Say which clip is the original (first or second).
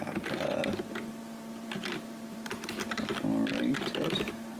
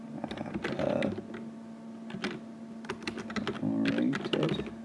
second